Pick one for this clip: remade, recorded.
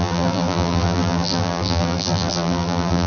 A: remade